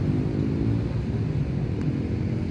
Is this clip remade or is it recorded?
recorded